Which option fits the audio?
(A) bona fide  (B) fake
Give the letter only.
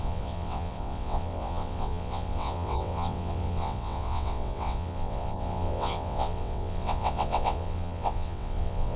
B